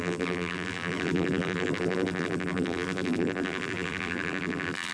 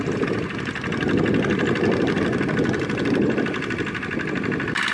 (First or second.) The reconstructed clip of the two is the first